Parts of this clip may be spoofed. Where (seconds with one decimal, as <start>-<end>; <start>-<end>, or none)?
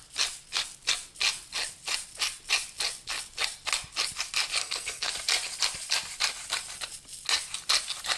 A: 4.6-5.1